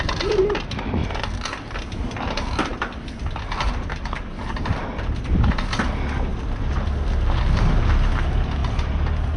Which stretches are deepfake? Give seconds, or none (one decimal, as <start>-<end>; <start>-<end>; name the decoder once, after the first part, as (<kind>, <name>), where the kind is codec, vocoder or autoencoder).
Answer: none